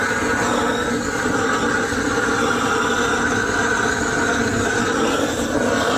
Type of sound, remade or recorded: recorded